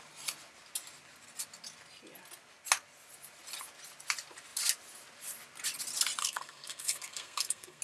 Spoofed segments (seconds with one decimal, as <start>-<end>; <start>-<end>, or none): 6.2-7.8